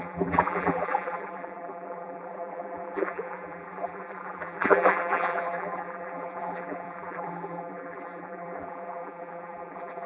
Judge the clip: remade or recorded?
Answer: remade